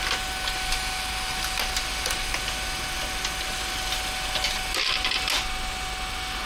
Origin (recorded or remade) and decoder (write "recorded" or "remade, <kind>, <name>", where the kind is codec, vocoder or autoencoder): recorded